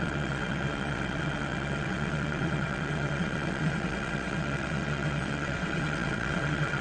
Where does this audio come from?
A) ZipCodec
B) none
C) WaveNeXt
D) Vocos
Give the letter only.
C